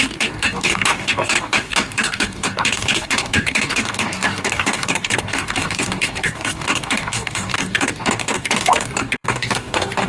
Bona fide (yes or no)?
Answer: no